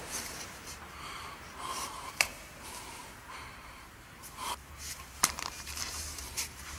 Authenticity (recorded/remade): remade